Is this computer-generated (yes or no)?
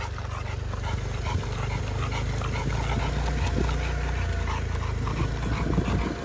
no